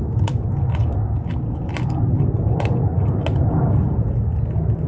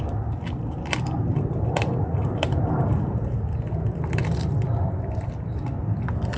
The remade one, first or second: second